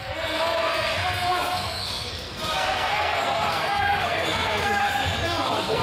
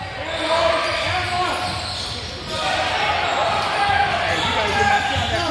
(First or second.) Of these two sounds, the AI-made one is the first